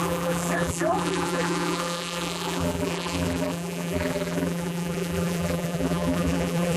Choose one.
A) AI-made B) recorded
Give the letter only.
A